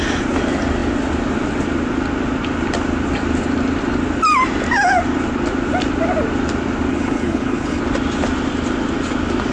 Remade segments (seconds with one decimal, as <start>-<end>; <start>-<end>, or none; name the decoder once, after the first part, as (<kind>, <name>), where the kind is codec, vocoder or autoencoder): 6.9-7.8 (codec, HILCodec)